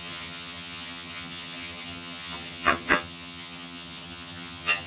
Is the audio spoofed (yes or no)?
yes